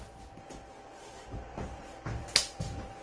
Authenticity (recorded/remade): recorded